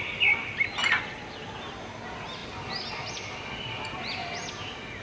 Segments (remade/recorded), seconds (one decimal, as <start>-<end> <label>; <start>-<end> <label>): 0.0-5.0 recorded